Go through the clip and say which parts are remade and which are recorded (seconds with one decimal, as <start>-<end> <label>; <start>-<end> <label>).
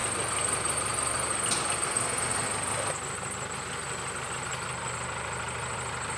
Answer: 0.0-6.2 recorded